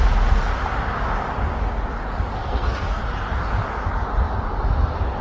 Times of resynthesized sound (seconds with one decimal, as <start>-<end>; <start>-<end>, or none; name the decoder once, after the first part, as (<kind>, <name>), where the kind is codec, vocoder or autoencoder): 2.4-3.0 (codec, SNAC)